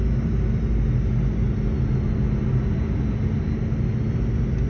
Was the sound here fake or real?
real